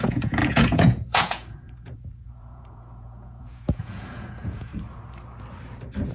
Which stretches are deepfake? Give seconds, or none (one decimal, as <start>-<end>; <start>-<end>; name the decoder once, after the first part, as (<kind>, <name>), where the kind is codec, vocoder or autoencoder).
0.0-4.7 (vocoder, Vocos)